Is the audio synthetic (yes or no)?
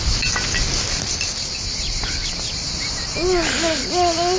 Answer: no